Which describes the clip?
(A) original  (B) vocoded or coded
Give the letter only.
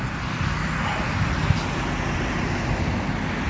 A